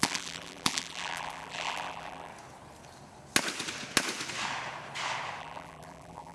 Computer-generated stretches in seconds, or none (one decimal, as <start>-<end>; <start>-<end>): 0.0-2.3; 5.4-6.3